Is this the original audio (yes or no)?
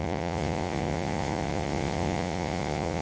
no